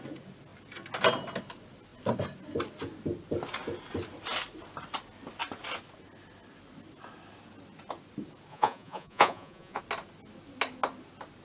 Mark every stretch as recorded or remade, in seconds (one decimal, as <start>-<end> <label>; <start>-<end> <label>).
0.0-8.5 recorded; 8.5-9.8 remade; 9.8-11.4 recorded